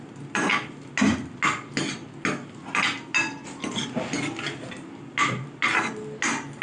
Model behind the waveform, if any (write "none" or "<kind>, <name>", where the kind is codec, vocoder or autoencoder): none